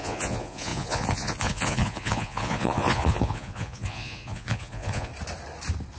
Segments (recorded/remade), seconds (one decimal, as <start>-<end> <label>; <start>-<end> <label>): 0.0-5.1 remade; 5.1-6.0 recorded